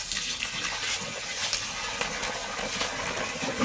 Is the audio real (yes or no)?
yes